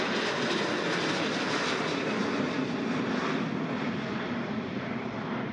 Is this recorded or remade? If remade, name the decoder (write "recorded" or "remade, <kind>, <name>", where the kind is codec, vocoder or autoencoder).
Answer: remade, vocoder, BigVGAN v2